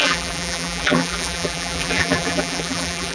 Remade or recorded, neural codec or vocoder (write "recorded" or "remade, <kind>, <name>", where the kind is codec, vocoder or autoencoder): remade, vocoder, BigVGAN v2